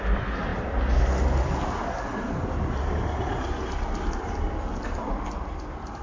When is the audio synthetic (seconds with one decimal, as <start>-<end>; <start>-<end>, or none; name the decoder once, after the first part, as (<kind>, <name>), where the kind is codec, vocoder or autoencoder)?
none